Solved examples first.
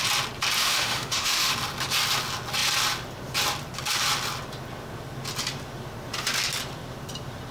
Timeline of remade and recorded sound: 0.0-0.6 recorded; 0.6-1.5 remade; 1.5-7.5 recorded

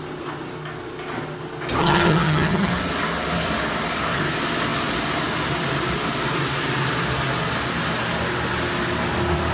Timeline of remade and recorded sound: 0.0-1.8 recorded; 1.8-2.7 remade; 2.7-9.5 recorded